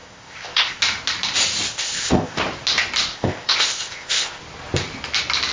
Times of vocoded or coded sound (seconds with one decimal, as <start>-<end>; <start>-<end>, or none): 0.0-0.8; 1.7-2.4; 3.1-4.4